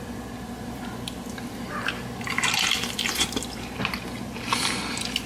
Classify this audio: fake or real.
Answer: real